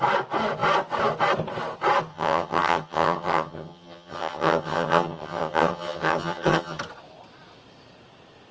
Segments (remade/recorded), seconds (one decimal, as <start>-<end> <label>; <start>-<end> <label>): 0.0-2.1 recorded; 2.1-6.8 remade; 6.8-8.5 recorded